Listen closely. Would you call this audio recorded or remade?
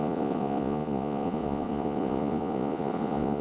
remade